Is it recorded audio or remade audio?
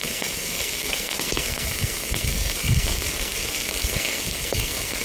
remade